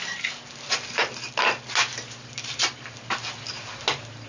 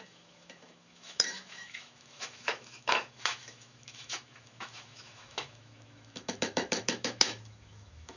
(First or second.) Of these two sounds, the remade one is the second